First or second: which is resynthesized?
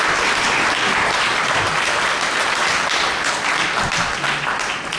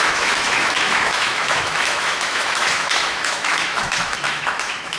second